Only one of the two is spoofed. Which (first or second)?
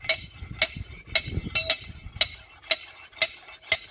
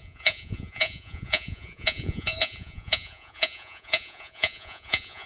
second